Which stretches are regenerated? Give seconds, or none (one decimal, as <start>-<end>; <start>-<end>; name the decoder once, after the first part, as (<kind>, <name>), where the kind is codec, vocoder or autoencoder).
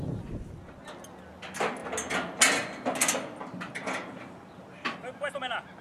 none